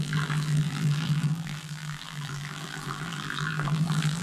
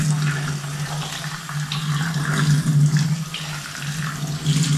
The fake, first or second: first